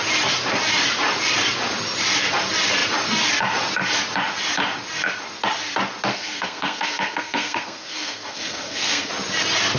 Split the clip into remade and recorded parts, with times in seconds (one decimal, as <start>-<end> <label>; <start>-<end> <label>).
0.0-6.1 recorded; 6.1-9.1 remade; 9.1-9.8 recorded